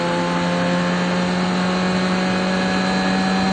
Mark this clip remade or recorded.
recorded